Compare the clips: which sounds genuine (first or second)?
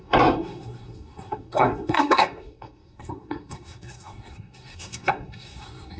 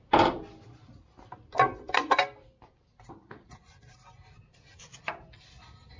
second